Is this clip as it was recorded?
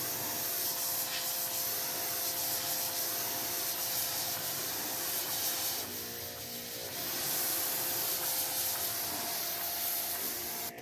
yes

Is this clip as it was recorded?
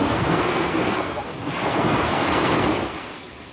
no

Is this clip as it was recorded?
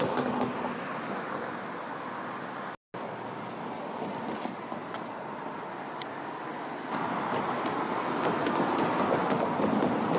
yes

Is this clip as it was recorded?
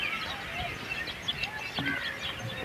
yes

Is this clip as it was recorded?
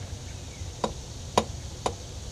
yes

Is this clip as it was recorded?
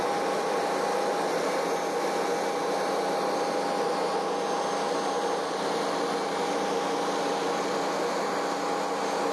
yes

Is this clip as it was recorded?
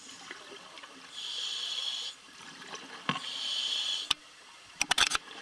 yes